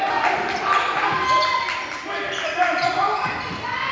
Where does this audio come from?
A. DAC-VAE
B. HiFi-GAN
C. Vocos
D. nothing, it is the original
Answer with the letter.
D